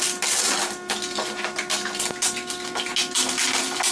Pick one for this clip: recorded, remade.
recorded